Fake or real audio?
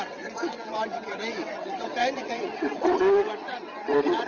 fake